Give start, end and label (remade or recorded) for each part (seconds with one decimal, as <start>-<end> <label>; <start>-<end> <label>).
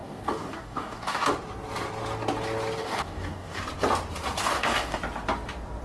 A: 0.0-1.3 remade; 1.3-2.8 recorded; 2.8-3.6 remade; 3.6-4.4 recorded; 4.4-5.0 remade; 5.0-5.8 recorded